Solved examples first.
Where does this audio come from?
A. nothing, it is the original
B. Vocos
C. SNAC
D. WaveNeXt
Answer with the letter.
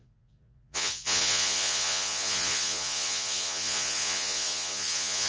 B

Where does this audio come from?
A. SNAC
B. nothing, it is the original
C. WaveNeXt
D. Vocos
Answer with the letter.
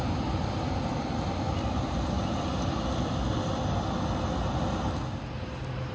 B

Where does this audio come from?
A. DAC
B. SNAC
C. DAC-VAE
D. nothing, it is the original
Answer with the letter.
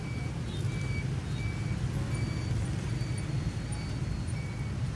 D